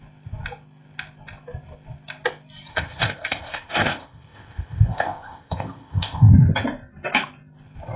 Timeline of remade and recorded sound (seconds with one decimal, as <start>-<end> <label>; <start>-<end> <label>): 0.0-2.7 recorded; 2.7-6.3 remade; 6.3-8.0 recorded